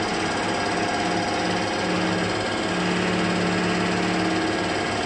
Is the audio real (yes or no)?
yes